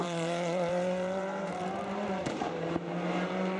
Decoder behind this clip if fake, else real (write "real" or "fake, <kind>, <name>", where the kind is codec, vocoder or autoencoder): fake, vocoder, BigVGAN v2